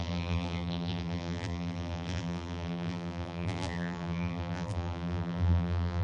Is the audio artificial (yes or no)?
yes